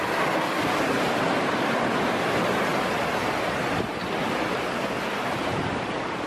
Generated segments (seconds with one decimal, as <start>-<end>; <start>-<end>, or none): none